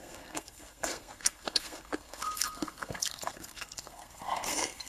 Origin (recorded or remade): remade